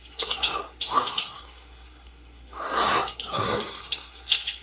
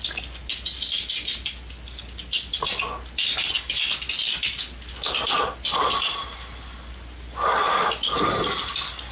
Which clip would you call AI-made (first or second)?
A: first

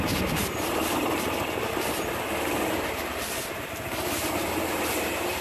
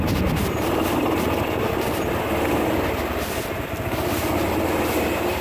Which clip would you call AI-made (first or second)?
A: first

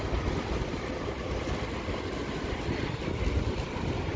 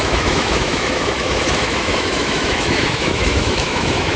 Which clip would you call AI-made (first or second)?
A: second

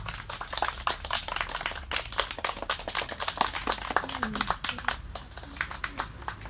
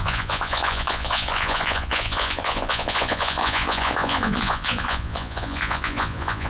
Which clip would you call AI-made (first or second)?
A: second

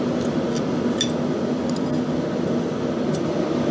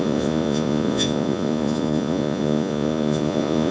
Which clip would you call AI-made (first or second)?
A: second